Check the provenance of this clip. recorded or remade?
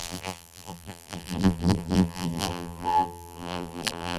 remade